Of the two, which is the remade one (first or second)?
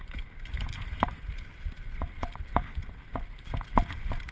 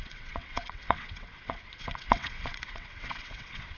second